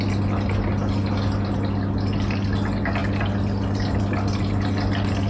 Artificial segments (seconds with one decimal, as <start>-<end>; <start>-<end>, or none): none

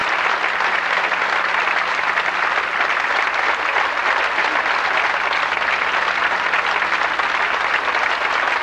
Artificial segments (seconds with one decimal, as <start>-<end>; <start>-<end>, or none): none

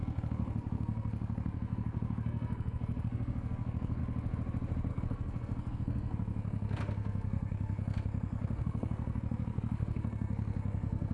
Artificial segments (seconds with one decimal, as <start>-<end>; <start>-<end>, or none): 0.0-4.0; 4.9-11.1

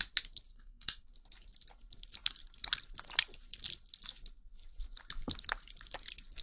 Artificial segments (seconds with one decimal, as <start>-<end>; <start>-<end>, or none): 0.5-1.0